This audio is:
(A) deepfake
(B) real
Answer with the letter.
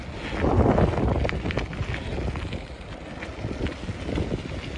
B